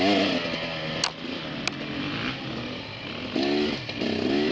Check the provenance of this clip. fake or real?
real